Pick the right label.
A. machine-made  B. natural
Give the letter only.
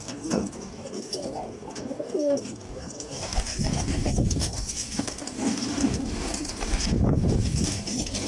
A